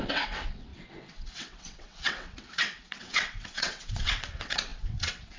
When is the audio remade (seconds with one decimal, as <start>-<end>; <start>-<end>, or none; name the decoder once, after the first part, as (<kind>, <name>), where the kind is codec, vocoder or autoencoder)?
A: 0.0-5.4 (vocoder, WaveNeXt)